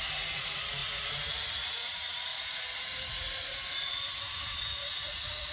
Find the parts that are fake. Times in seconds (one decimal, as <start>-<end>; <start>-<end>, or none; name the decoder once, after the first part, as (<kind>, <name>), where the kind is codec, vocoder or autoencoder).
0.0-5.5 (vocoder, Vocos)